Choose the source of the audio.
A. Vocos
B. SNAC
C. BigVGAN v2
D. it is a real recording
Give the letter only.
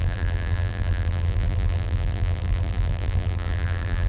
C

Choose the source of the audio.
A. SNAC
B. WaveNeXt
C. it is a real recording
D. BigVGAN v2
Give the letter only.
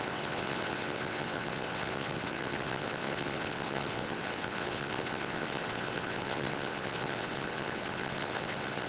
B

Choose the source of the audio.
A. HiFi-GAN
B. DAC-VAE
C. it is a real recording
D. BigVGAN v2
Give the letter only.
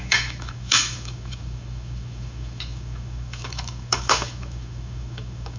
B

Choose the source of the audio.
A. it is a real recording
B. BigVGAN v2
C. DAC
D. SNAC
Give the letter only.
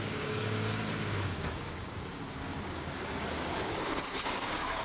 C